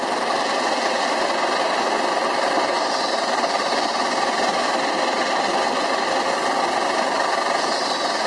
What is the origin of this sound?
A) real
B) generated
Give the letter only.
A